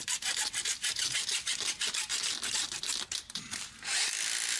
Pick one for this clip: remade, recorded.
recorded